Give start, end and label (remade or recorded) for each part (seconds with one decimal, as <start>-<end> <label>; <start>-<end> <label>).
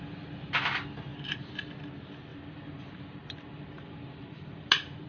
0.0-1.1 recorded; 1.1-1.7 remade; 1.7-2.3 recorded; 2.3-5.1 remade